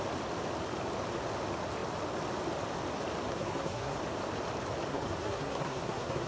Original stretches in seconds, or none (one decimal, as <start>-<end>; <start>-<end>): 0.0-3.3; 4.0-4.9